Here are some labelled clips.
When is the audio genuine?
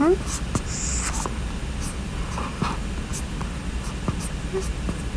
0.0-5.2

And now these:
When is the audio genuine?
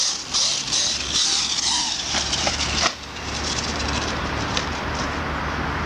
0.0-1.8; 5.2-5.9